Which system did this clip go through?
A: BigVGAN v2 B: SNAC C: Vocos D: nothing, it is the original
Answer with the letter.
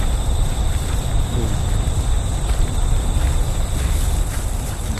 A